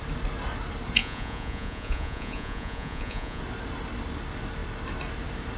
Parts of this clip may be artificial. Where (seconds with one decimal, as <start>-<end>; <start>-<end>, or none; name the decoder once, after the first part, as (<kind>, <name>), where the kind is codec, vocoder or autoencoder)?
1.0-3.4 (vocoder, Vocos)